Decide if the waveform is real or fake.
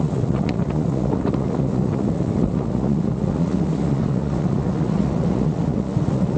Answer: fake